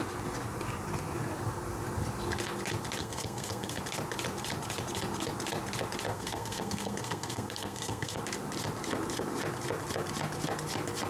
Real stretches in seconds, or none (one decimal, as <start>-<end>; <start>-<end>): 0.0-3.0; 3.8-6.1; 8.2-11.1